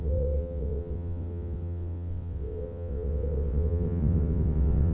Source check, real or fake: fake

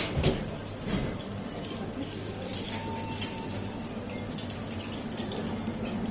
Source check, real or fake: real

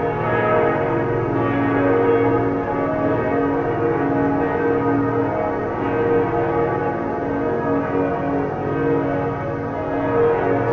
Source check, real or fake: real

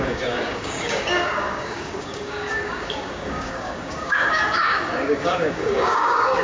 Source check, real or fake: fake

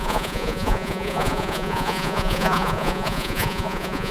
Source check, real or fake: fake